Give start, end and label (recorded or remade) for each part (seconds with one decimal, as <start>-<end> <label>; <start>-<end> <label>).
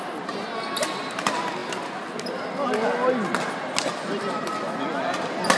0.0-5.6 recorded